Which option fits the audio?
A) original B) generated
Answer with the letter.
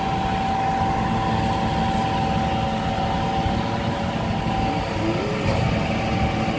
A